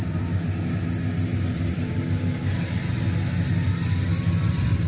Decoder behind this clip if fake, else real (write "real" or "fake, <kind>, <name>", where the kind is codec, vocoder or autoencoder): real